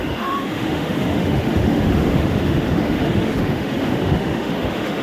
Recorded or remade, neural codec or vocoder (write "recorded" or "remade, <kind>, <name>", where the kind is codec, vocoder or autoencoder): remade, autoencoder, DAC-VAE